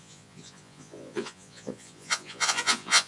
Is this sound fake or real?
fake